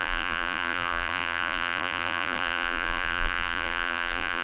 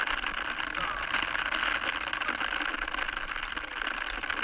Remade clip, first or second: first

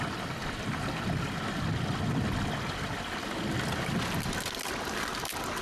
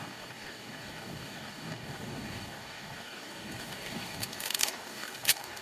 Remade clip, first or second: second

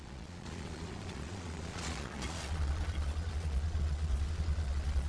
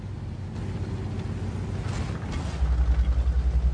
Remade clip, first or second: first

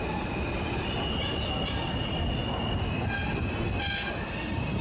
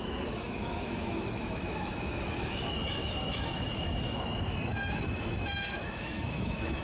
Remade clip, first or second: second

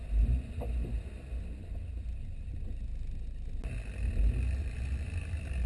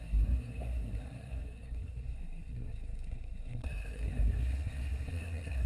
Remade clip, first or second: second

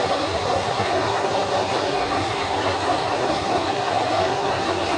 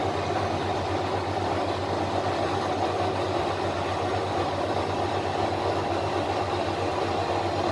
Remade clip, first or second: first